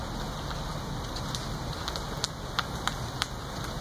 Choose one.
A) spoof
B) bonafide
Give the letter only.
B